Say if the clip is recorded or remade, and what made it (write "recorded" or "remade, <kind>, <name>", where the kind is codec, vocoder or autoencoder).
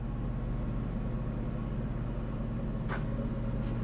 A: recorded